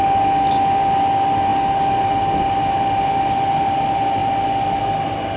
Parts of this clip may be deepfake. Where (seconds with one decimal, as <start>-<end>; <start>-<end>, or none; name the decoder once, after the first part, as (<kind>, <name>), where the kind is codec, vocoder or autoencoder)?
none